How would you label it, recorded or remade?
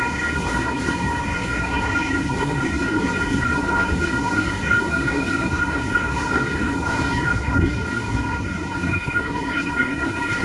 remade